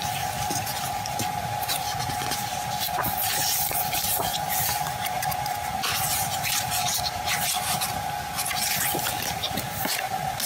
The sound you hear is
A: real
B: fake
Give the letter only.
A